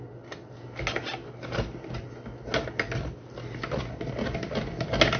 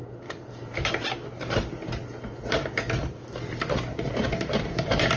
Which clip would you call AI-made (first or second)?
second